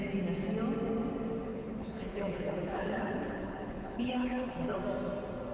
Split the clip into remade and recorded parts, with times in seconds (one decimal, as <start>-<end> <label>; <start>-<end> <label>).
0.0-1.5 recorded; 1.5-4.8 remade; 4.8-5.5 recorded